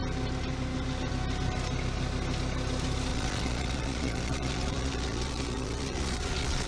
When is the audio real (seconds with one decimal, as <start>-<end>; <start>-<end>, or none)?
0.0-3.1